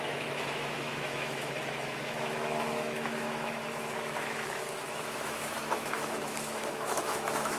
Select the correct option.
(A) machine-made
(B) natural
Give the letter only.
A